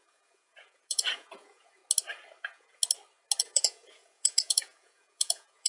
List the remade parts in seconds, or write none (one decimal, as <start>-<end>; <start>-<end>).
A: 0.0-1.8; 2.4-2.8; 3.4-5.7